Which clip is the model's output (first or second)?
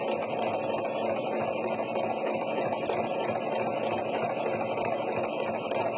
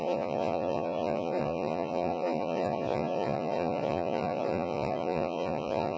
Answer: second